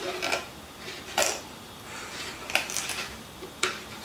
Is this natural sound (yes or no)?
no